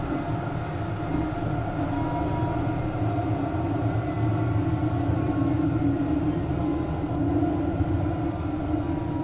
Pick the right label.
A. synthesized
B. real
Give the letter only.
B